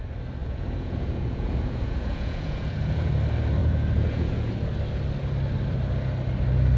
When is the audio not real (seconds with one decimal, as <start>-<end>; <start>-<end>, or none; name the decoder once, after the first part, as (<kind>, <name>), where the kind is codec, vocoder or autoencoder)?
0.4-3.1 (vocoder, Vocos); 3.6-4.5